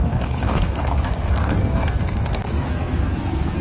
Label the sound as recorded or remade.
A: remade